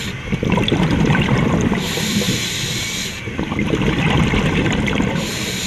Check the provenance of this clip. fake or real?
fake